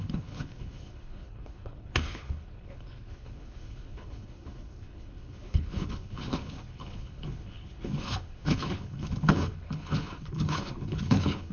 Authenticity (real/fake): fake